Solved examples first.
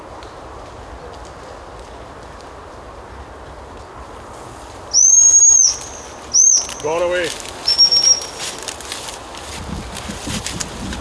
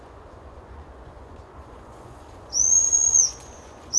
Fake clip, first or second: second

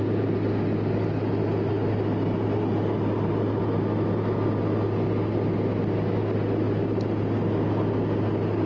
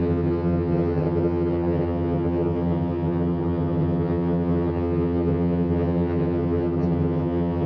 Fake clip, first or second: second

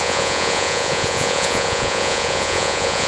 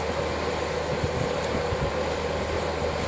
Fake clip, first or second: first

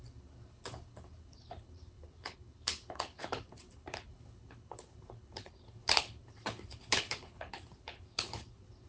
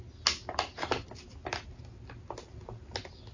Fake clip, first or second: first